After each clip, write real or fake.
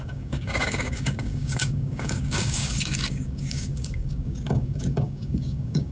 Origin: fake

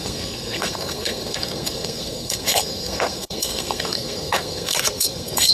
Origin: fake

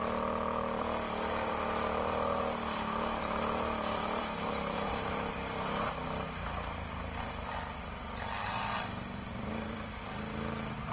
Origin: fake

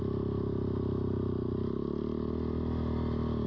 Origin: real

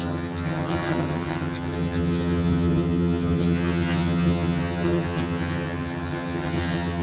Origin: fake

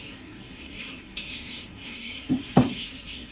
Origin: fake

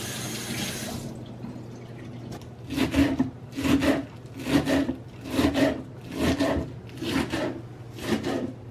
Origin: real